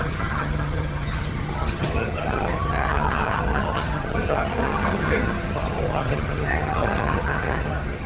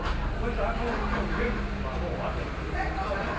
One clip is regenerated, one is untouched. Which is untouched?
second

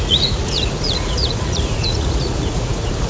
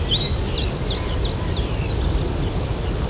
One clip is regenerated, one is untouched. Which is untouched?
second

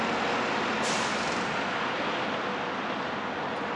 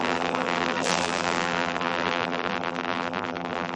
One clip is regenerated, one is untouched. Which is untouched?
first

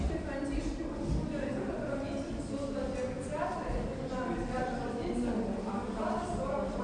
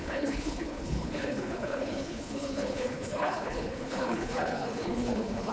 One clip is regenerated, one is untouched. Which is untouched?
first